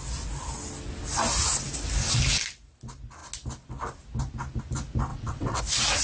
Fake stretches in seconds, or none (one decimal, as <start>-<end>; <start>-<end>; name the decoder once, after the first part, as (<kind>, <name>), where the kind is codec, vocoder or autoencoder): 5.1-5.6 (vocoder, WaveNeXt)